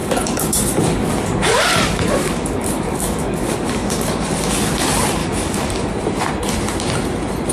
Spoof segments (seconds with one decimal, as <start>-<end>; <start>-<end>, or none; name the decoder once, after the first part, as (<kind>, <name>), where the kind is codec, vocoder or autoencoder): 0.0-4.5 (codec, DAC); 5.2-5.9